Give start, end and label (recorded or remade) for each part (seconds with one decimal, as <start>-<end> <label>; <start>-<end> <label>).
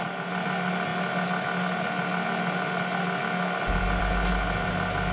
0.0-5.1 recorded